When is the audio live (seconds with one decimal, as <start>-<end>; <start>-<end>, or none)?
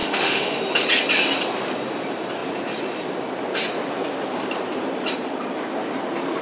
0.6-6.4